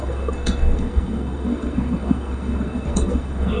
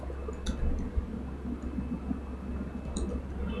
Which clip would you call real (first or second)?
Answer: second